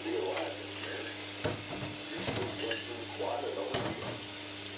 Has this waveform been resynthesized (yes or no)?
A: no